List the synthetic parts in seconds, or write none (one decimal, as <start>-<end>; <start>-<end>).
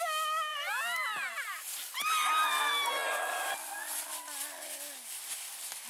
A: 0.5-2.6